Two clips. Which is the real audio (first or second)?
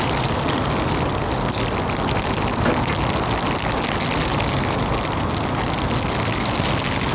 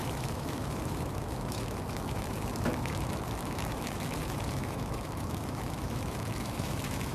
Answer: first